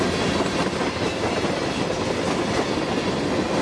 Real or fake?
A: real